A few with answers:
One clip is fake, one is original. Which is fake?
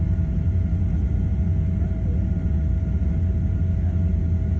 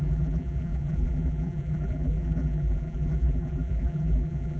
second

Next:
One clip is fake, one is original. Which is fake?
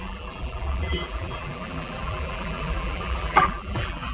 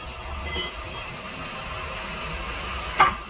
first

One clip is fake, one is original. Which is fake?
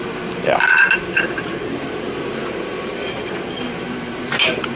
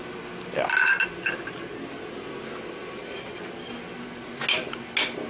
first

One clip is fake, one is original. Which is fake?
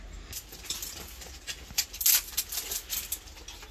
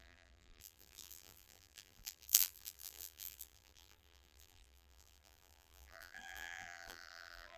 second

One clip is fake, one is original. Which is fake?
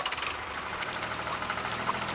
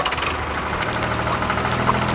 first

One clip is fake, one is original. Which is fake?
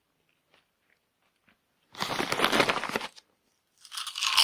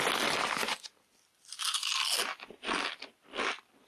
first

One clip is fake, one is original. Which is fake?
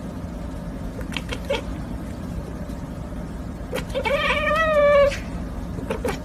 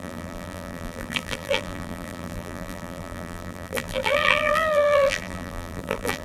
second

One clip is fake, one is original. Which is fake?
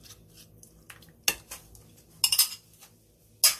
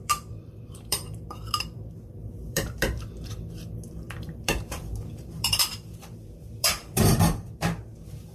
second